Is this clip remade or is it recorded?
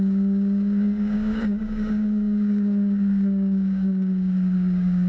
remade